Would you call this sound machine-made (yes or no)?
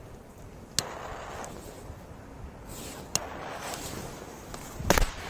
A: no